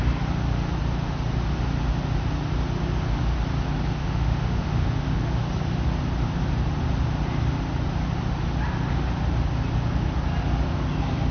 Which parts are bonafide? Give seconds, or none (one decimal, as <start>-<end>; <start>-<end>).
0.0-4.0; 5.2-11.3